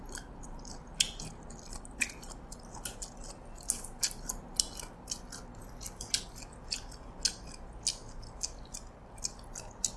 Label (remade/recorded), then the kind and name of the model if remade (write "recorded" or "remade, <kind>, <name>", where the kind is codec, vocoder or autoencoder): recorded